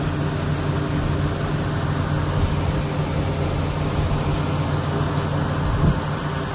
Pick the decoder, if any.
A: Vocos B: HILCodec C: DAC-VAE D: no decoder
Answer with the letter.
D